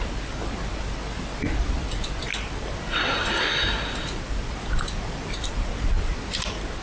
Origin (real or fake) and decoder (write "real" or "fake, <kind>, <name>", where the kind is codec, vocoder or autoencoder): real